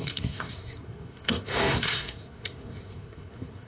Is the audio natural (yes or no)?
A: no